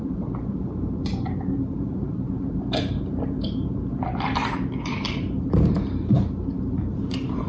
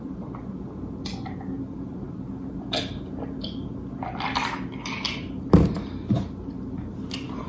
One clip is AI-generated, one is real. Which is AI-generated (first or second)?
first